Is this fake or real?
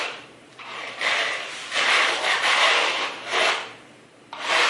fake